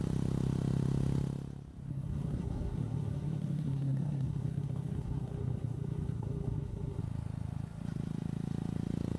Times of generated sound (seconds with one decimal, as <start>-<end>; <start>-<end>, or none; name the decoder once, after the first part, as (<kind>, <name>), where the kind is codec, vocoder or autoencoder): 1.9-7.0 (codec, SNAC)